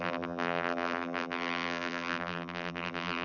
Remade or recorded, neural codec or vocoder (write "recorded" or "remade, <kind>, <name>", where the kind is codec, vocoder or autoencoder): remade, vocoder, BigVGAN v2